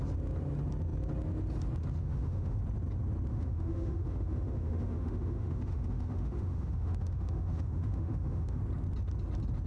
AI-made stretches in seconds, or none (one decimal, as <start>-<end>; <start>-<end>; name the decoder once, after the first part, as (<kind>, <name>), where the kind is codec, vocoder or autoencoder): 2.0-2.6 (autoencoder, DAC-VAE); 3.3-8.6